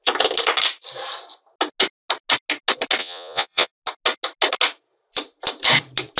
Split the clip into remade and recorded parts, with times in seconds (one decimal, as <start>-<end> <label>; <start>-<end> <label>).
0.0-3.0 recorded; 3.0-3.7 remade; 3.7-6.2 recorded